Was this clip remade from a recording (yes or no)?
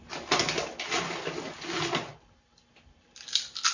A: no